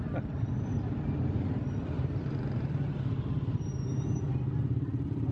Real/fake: fake